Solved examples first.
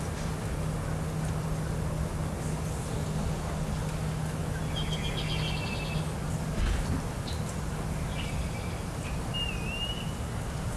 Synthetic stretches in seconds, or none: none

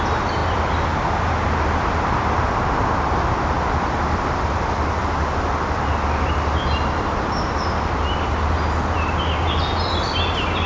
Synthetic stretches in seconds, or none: none

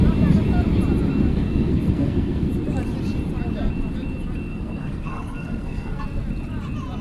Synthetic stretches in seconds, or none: 1.3-2.5; 4.5-6.0

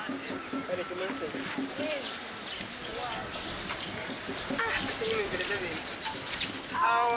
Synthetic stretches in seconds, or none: none

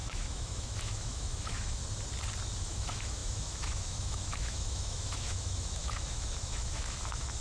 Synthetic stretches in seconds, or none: 0.0-1.8; 2.6-7.4